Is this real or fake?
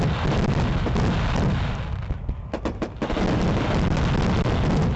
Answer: real